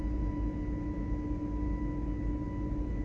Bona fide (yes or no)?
yes